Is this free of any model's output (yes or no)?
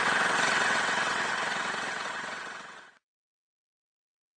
no